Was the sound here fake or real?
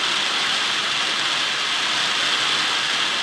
real